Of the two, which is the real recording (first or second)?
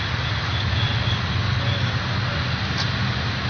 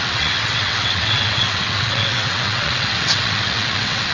first